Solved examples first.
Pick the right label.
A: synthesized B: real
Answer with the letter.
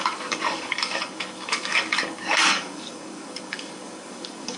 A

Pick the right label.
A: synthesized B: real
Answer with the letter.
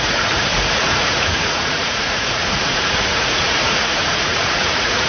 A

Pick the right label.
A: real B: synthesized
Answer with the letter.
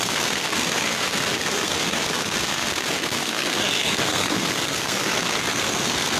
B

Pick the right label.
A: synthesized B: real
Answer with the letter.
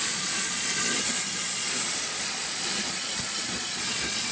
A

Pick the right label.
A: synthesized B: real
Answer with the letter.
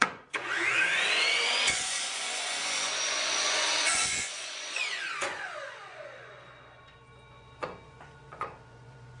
A